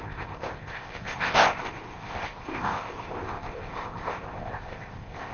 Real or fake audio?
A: fake